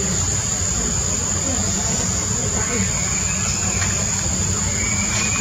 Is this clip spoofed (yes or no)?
no